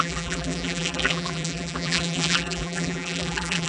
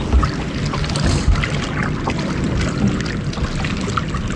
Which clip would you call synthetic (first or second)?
first